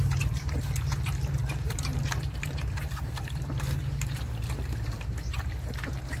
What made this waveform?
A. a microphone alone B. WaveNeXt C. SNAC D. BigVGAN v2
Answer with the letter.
D